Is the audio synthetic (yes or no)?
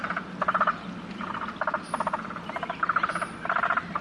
no